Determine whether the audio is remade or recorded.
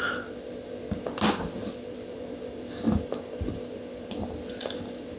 recorded